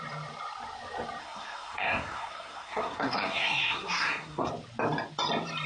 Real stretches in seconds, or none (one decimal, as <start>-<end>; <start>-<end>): 0.0-1.2; 4.5-5.7

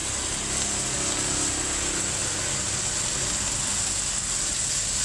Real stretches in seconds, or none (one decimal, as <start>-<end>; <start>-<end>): 0.0-5.0

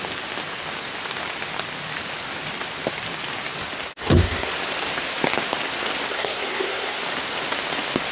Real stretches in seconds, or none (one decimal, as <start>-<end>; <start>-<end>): 0.0-4.0; 4.5-6.1; 7.0-8.1

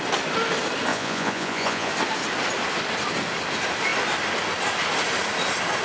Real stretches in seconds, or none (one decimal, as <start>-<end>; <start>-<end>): 0.0-0.9; 1.9-5.8